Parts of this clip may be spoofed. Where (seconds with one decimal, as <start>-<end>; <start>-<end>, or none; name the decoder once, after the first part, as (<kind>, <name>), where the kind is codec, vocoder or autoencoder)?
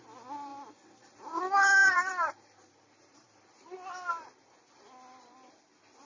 0.5-1.4 (vocoder, BigVGAN v2); 1.8-5.5